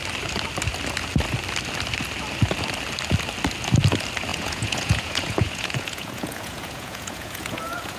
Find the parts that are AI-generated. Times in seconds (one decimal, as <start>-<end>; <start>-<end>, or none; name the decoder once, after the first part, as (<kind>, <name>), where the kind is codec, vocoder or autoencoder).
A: 4.3-8.0 (vocoder, Vocos)